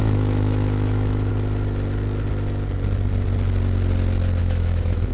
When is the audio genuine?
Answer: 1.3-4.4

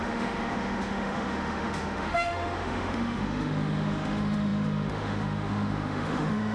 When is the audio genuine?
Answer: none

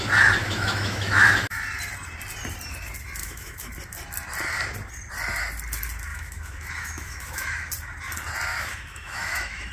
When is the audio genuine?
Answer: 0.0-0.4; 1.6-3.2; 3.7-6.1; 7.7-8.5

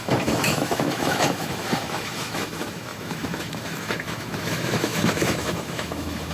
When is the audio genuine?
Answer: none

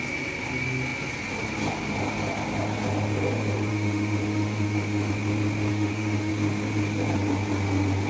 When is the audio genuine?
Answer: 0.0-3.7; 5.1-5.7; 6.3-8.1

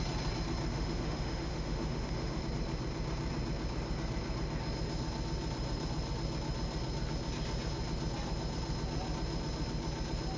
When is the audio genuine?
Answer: 0.0-0.7; 2.4-10.4